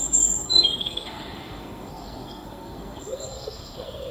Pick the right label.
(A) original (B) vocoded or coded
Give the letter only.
B